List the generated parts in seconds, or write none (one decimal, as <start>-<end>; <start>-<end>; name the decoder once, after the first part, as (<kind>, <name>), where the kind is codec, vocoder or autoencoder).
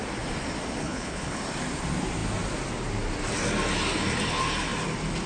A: 0.8-1.4 (codec, HILCodec)